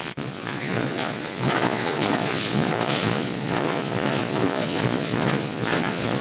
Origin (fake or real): fake